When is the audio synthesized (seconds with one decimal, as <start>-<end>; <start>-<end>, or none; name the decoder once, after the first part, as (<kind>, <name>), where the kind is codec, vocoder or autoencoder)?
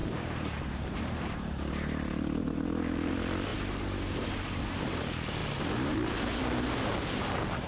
0.0-1.7 (vocoder, BigVGAN v2); 3.5-5.0